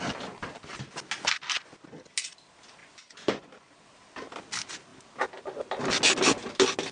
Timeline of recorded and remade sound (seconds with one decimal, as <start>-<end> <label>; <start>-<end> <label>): 0.0-2.8 recorded; 2.8-3.7 remade; 3.7-6.9 recorded